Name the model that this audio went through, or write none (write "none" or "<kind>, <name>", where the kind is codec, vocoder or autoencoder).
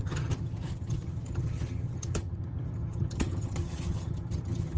vocoder, HiFi-GAN